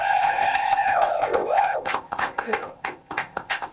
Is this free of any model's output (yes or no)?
no